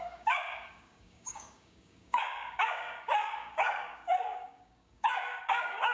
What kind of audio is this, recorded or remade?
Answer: remade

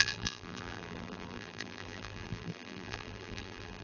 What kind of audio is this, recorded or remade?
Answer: remade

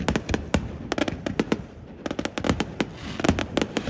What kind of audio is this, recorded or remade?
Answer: recorded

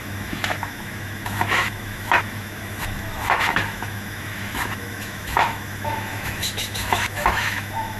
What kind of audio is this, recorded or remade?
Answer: remade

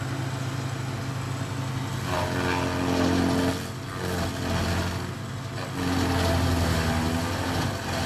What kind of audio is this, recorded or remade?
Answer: recorded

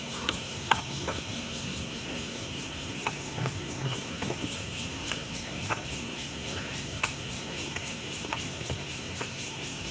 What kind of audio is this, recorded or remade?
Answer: remade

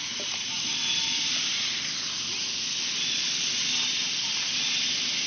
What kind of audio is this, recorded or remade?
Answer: recorded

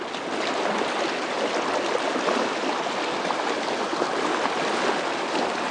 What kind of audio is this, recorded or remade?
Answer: recorded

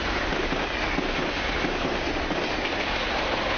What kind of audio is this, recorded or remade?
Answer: recorded